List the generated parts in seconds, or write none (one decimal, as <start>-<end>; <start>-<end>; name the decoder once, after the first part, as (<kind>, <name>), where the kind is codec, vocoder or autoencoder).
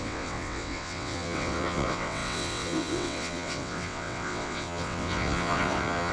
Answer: 0.0-6.1 (vocoder, WaveNeXt)